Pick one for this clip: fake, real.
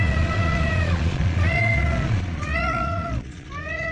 fake